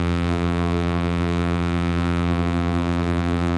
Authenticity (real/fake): fake